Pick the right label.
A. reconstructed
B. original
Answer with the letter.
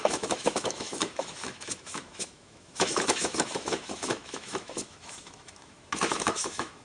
A